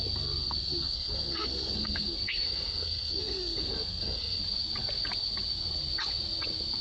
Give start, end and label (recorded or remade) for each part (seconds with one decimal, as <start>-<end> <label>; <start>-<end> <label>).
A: 0.0-0.4 recorded; 0.4-4.4 remade; 4.4-6.8 recorded